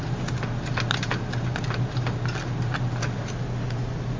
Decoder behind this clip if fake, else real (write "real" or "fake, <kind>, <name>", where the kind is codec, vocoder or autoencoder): real